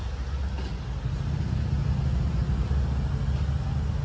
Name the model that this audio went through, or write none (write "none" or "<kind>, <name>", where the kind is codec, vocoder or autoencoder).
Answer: none